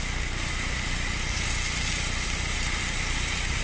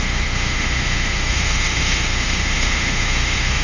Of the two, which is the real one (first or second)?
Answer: first